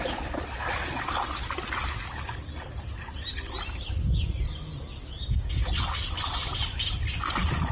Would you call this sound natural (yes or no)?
yes